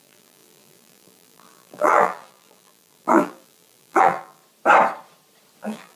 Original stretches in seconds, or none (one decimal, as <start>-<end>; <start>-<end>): 4.4-5.6